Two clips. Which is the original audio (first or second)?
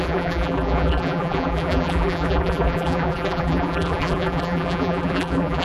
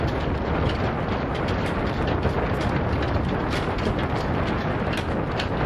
second